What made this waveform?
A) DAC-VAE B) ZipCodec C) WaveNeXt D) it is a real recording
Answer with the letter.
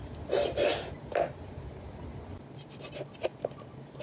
D